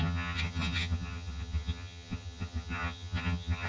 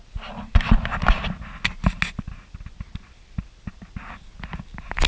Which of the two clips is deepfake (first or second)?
first